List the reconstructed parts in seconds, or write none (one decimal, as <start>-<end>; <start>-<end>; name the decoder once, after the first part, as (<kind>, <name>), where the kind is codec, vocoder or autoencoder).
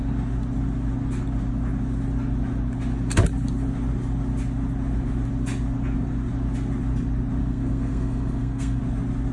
7.4-8.8 (codec, SNAC)